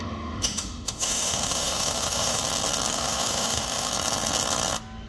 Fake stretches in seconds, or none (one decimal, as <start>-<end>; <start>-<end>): 0.0-2.4; 2.9-3.9